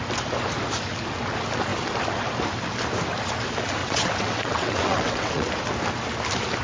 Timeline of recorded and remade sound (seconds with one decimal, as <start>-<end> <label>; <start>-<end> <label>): 0.0-3.8 recorded; 3.8-5.5 remade; 5.5-6.6 recorded

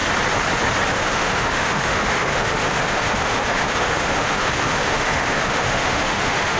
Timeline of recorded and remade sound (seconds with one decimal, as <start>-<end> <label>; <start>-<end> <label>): 0.0-0.9 recorded; 0.9-6.6 remade

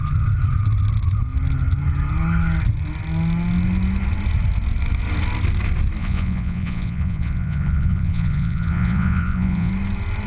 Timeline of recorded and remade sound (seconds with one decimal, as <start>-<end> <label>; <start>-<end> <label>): 0.0-6.0 recorded; 6.0-9.7 remade; 9.7-10.3 recorded